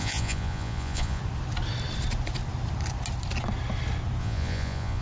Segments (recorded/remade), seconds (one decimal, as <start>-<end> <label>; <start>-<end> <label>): 0.0-1.2 remade; 1.2-4.2 recorded; 4.2-5.0 remade